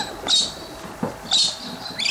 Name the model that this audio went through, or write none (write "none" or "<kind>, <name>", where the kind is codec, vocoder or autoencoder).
none